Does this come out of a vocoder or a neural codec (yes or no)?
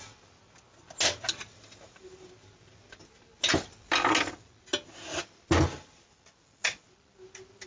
no